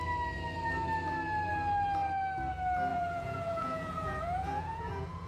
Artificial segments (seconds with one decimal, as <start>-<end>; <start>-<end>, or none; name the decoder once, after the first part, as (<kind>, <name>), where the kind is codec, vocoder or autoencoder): 2.9-5.3 (vocoder, Vocos)